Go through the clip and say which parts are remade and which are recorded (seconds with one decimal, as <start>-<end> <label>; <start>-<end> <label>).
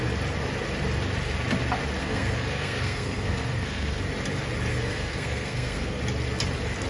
0.0-2.0 recorded; 2.0-4.0 remade; 4.0-4.7 recorded; 4.7-6.0 remade; 6.0-6.9 recorded